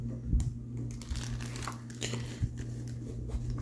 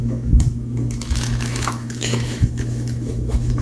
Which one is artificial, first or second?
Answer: second